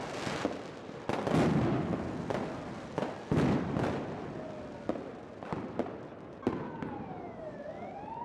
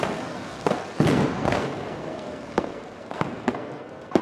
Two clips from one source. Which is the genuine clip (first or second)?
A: first